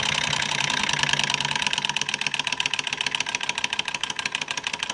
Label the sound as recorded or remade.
recorded